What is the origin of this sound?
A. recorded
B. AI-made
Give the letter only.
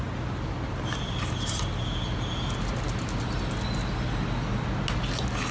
A